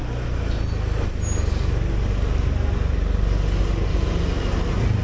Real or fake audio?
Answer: real